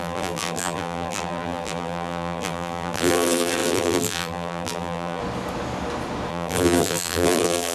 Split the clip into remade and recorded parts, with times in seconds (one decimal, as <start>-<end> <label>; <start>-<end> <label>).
0.0-5.2 remade; 5.2-6.3 recorded; 6.3-7.7 remade